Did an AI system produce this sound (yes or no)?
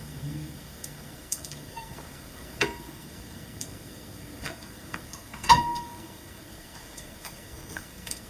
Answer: yes